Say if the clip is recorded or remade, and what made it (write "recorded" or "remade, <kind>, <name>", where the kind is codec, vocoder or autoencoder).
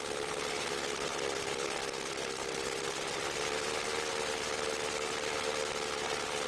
recorded